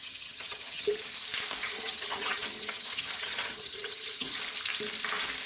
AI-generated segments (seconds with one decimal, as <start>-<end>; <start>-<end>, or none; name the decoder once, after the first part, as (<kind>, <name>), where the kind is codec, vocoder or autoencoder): 0.0-0.9 (vocoder, HiFi-GAN); 1.6-4.4